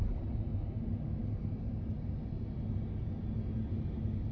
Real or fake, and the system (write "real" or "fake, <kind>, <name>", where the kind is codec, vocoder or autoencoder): real